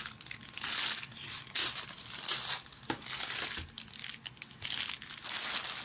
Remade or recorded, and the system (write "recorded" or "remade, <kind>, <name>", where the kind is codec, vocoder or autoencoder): recorded